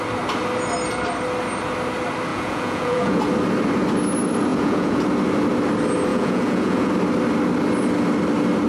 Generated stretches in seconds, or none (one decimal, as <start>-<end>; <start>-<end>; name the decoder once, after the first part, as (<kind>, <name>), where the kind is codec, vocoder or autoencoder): 2.3-3.2 (vocoder, Vocos); 4.5-5.0; 6.1-6.9